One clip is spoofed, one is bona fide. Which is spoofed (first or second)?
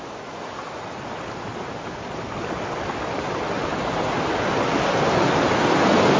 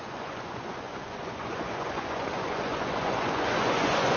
second